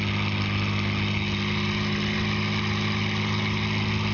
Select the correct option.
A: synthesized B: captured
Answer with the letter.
B